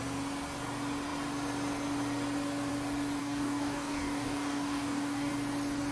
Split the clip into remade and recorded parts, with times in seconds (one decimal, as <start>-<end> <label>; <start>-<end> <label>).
0.0-3.2 recorded; 3.2-5.3 remade; 5.3-5.9 recorded